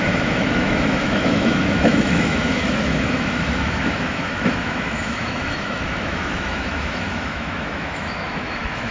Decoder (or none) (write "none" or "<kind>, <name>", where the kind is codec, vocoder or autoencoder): autoencoder, DAC-VAE